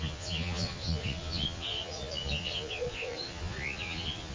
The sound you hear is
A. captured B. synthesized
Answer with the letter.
B